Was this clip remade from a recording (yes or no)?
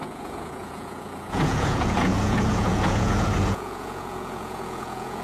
yes